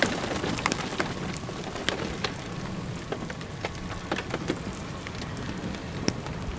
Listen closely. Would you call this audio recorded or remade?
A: recorded